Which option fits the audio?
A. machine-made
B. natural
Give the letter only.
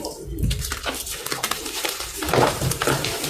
A